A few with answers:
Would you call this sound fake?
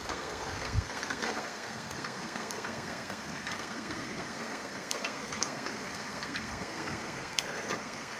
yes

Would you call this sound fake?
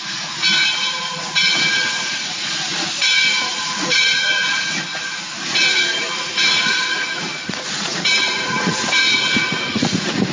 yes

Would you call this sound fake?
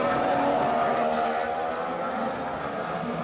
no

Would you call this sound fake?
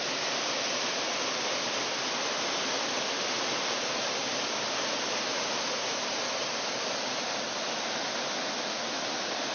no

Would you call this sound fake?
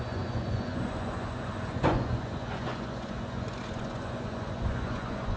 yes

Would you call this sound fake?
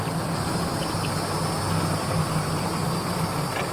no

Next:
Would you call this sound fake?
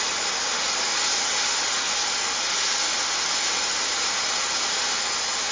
no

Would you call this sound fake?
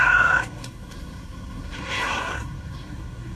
yes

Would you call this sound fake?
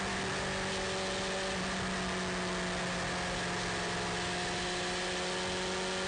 no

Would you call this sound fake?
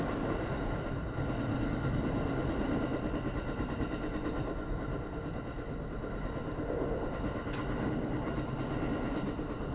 no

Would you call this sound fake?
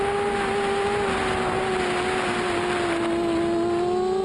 no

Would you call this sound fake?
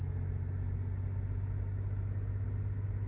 no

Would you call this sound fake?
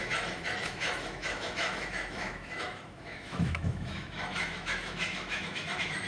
yes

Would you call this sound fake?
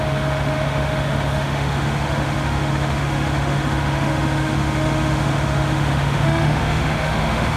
yes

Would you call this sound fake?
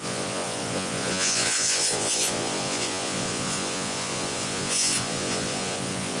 yes